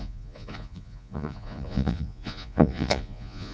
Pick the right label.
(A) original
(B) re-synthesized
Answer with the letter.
B